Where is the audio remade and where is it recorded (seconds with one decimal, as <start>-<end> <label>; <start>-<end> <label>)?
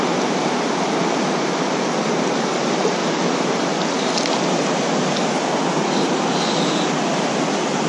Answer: 0.0-3.0 recorded; 3.0-3.6 remade; 3.6-7.9 recorded